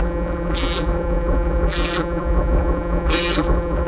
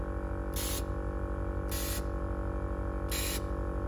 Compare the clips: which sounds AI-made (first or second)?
first